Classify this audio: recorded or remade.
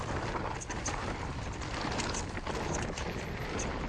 recorded